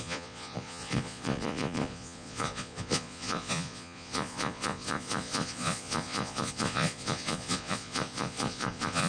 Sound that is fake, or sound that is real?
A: fake